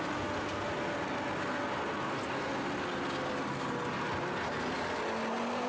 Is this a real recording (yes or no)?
yes